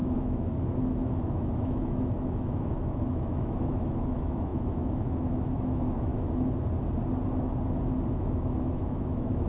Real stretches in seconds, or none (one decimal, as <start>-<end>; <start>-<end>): 6.1-8.1